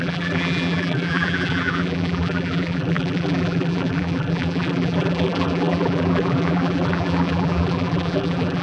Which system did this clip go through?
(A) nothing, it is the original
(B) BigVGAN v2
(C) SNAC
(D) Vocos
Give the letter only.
B